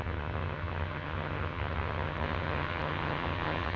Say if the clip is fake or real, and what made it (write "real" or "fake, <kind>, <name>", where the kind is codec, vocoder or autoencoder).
fake, vocoder, HiFi-GAN